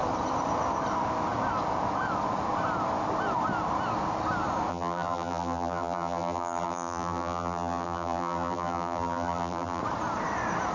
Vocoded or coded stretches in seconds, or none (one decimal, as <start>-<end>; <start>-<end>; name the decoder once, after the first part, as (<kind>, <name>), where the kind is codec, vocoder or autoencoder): 4.7-9.8 (vocoder, BigVGAN v2)